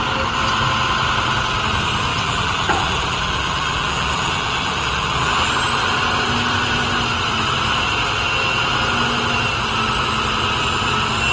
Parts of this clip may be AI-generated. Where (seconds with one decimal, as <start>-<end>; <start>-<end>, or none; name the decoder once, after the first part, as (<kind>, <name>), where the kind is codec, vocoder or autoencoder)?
2.1-5.5 (vocoder, BigVGAN v2)